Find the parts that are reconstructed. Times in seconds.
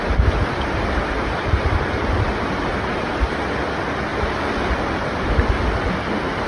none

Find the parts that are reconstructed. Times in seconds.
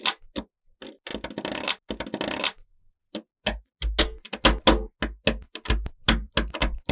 none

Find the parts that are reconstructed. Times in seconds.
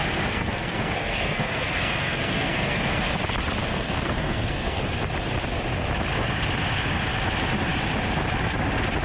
0.0-3.0 (codec, SNAC); 3.6-4.8